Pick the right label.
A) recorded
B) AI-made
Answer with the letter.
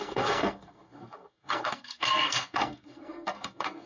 B